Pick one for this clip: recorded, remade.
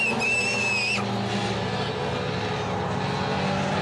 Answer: recorded